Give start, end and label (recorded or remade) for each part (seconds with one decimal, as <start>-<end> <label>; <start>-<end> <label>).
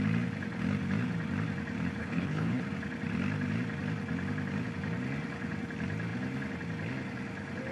0.0-2.0 recorded; 2.0-2.6 remade; 2.6-7.7 recorded